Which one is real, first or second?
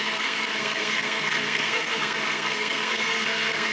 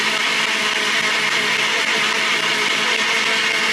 second